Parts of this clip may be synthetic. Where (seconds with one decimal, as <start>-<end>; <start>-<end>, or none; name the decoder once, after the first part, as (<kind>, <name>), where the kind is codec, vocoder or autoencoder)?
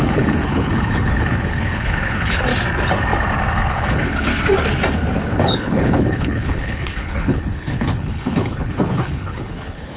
0.0-2.5 (codec, HILCodec); 3.7-4.3; 5.4-10.0